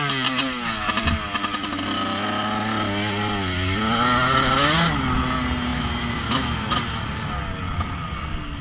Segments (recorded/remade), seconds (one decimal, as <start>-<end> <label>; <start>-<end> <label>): 0.0-5.7 recorded; 5.7-6.8 remade; 6.8-8.6 recorded